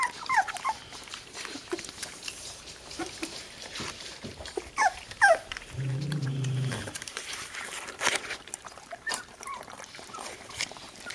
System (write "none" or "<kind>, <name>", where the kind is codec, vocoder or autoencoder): vocoder, BigVGAN v2